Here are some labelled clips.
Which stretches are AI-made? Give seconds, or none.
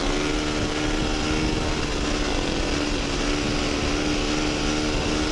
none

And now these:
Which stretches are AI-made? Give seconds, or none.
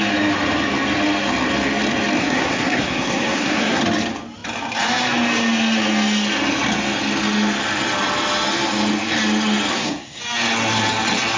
2.2-3.8; 9.7-10.2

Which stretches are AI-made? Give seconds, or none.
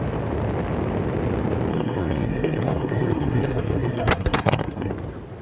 1.7-4.9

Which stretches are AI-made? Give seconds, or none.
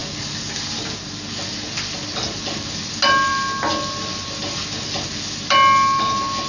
none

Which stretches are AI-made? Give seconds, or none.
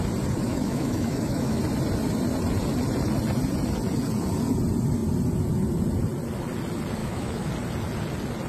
0.5-1.6; 7.0-7.5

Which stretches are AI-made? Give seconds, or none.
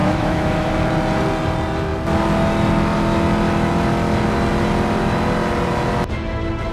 0.0-0.7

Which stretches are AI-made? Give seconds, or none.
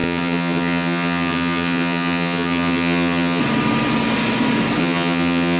0.0-3.4; 4.8-5.6